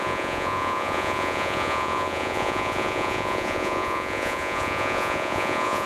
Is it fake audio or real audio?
fake